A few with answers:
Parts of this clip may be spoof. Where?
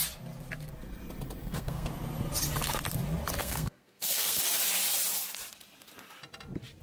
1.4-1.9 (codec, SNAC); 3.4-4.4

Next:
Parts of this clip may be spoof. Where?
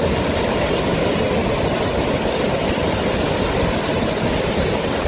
none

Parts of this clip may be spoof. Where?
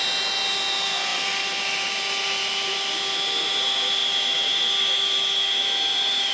none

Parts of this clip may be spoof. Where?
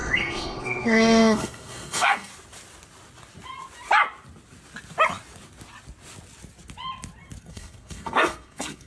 0.0-2.3 (codec, SNAC); 7.4-8.9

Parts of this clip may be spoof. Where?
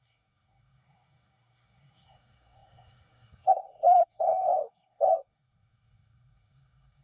0.0-7.0 (codec, SNAC)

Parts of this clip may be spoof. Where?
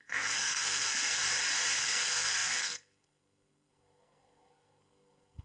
0.0-1.2 (codec, SNAC); 1.8-5.4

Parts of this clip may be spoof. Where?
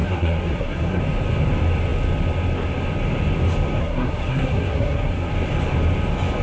0.0-1.0 (codec, SNAC); 3.8-5.3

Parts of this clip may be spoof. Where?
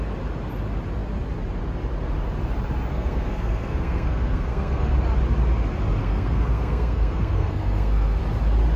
2.9-4.9 (codec, SNAC); 6.0-8.2